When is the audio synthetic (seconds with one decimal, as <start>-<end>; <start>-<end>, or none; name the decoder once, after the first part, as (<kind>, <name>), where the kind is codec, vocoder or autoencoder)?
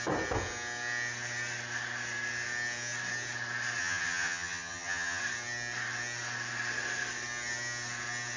3.8-5.2 (vocoder, HiFi-GAN)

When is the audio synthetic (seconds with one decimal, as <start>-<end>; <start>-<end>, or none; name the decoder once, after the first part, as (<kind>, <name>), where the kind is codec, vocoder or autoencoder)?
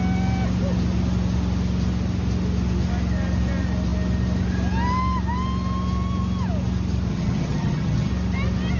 7.1-8.1 (vocoder, HiFi-GAN)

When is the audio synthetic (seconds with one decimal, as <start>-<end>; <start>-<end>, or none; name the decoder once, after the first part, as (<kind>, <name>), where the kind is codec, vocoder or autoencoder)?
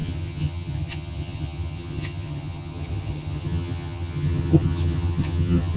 0.0-5.8 (vocoder, HiFi-GAN)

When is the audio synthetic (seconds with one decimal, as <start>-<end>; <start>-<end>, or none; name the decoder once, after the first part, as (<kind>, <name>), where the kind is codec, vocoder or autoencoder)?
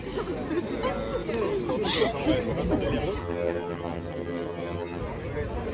3.2-5.0 (vocoder, HiFi-GAN)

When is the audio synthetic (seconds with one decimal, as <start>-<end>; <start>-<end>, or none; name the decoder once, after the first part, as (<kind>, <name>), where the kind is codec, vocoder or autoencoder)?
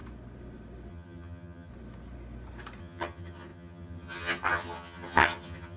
0.9-1.7 (vocoder, HiFi-GAN); 2.8-5.8